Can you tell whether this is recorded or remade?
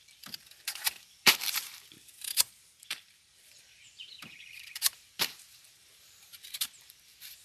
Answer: remade